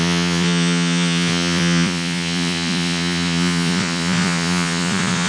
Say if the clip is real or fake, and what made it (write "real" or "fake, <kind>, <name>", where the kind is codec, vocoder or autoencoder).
fake, vocoder, Vocos